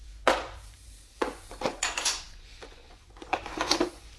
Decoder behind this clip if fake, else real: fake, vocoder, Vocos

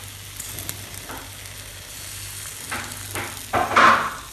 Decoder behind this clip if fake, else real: real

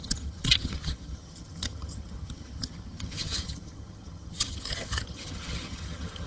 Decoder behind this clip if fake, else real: fake, vocoder, HiFi-GAN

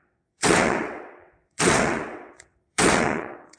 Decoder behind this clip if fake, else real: fake, vocoder, WaveNeXt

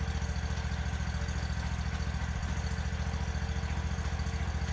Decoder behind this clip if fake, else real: real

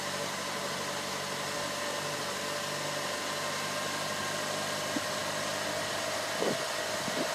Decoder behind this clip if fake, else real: real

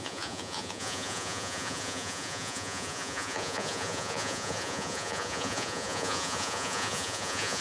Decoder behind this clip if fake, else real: fake, vocoder, Vocos